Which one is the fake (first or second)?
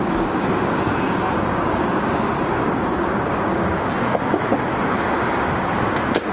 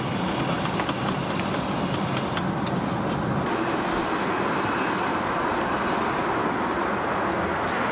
first